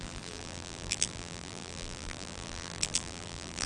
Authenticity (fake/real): fake